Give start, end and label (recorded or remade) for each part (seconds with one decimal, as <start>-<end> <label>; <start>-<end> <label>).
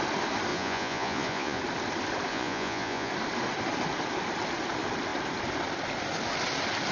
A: 0.0-0.5 recorded; 0.5-1.6 remade; 1.6-2.3 recorded; 2.3-3.1 remade; 3.1-6.9 recorded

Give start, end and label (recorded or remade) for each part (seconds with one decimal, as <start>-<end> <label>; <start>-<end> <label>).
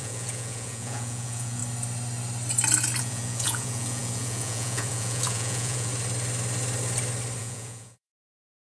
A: 0.0-1.6 remade; 1.6-3.0 recorded; 3.0-5.9 remade; 5.9-7.4 recorded; 7.4-8.7 remade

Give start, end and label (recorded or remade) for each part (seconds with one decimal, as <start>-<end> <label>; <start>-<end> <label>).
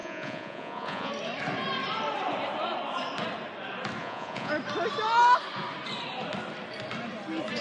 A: 0.0-1.1 remade; 1.1-4.0 recorded; 4.0-4.5 remade; 4.5-7.6 recorded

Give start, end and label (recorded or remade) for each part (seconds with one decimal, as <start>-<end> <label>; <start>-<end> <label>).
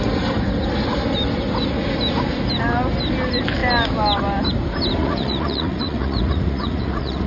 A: 0.0-5.0 recorded; 5.0-7.3 remade